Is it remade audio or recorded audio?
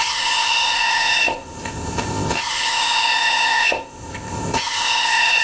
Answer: remade